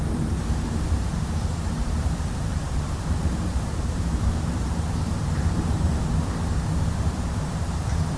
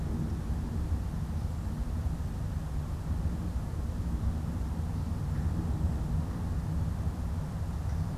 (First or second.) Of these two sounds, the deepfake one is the first